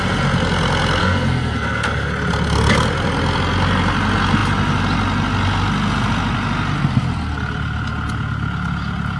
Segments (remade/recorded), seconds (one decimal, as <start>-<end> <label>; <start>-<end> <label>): 0.0-1.0 recorded; 1.0-2.1 remade; 2.1-9.2 recorded